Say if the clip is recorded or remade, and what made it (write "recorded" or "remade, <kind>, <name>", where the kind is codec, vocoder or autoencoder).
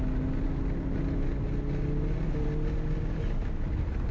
recorded